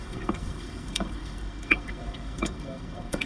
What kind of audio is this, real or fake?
fake